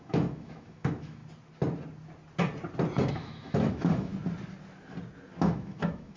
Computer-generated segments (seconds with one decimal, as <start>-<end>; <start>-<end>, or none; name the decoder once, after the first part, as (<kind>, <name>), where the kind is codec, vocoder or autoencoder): 0.0-1.2 (autoencoder, DAC-VAE); 3.1-4.1; 5.4-6.2